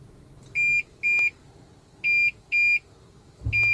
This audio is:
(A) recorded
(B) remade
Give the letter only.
A